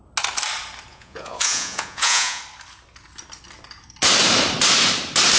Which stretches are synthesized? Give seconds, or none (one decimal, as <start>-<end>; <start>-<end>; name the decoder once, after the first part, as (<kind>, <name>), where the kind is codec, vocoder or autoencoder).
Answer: 0.9-2.4 (vocoder, Vocos)